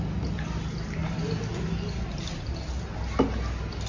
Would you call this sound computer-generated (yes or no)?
no